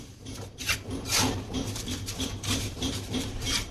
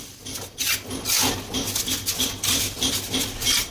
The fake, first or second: first